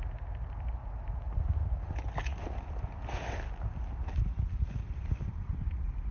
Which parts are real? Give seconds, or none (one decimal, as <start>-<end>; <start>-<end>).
0.0-6.1